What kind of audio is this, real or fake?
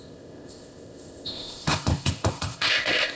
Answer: fake